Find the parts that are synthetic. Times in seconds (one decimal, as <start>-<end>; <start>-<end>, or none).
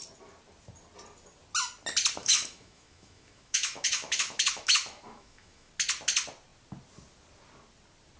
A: 2.2-5.7